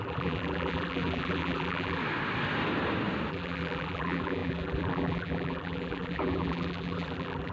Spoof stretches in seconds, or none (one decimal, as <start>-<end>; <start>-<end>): 0.0-2.0; 3.3-7.5